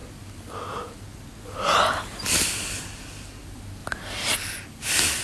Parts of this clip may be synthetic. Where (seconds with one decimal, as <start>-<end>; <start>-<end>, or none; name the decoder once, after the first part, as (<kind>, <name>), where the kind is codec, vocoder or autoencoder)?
none

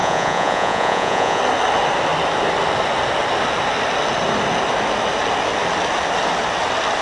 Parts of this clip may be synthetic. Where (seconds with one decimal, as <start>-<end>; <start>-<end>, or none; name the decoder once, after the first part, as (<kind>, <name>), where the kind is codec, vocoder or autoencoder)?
0.0-1.4 (vocoder, Vocos)

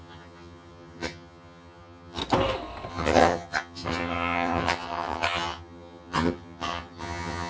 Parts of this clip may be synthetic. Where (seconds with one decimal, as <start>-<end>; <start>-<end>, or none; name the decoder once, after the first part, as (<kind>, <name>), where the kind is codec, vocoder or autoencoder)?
0.0-2.2 (vocoder, HiFi-GAN); 2.9-7.5

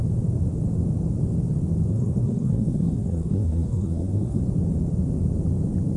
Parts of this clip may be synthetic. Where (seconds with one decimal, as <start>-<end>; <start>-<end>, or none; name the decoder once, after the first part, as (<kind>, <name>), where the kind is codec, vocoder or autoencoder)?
1.9-4.4 (codec, SNAC)